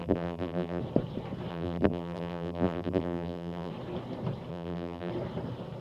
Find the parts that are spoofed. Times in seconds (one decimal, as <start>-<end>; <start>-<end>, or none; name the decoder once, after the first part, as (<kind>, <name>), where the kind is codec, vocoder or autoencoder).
0.0-0.8 (vocoder, BigVGAN v2); 1.5-3.7; 4.5-5.1